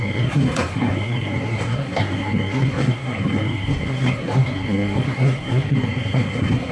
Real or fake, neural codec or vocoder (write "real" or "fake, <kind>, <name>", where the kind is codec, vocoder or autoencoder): fake, codec, SNAC